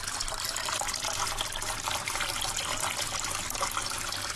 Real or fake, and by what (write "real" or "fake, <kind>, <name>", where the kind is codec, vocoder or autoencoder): real